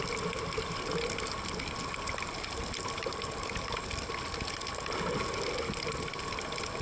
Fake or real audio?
real